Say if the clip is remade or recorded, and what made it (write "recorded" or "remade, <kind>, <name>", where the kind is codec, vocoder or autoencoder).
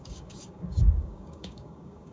remade, codec, DAC